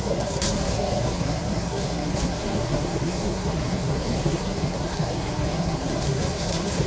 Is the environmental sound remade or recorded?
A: remade